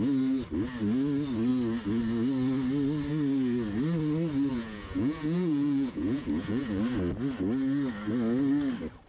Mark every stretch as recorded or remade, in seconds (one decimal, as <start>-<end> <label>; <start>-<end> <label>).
0.0-4.5 recorded; 4.5-6.8 remade; 6.8-9.1 recorded